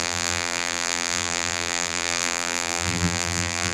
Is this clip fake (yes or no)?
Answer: yes